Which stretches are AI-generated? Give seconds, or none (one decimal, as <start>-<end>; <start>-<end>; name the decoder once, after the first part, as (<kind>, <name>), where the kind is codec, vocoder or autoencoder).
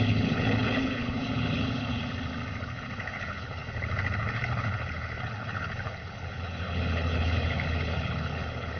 0.0-2.0 (codec, HILCodec); 2.6-8.8